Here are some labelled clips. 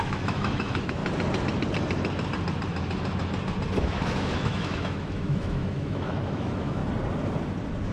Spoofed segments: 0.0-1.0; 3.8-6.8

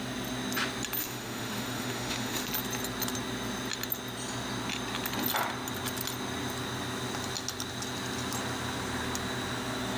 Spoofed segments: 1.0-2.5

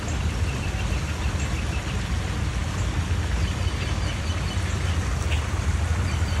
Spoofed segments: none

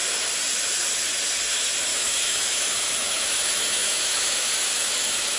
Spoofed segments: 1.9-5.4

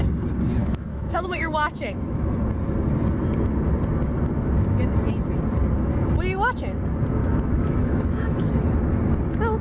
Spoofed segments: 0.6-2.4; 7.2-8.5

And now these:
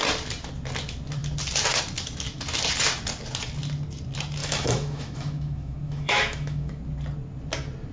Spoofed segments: 4.4-6.8